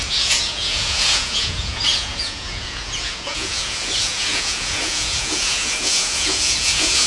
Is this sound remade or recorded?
remade